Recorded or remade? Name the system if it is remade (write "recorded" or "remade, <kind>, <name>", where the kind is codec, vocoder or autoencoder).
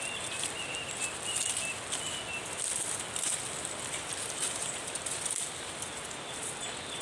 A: recorded